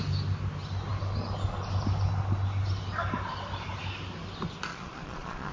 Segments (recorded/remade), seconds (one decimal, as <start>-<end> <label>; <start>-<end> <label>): 0.0-4.7 recorded; 4.7-5.5 remade